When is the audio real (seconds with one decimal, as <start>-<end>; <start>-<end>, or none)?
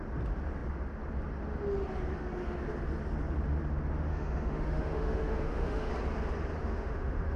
0.0-4.1; 5.9-6.6